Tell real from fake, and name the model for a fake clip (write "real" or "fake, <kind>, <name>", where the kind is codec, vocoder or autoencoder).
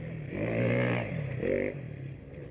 real